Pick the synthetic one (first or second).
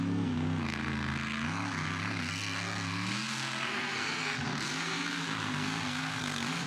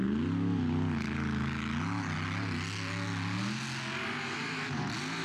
first